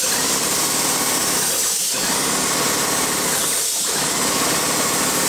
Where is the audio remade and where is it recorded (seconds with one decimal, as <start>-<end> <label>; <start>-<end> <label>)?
0.0-1.2 remade; 1.2-4.0 recorded; 4.0-5.3 remade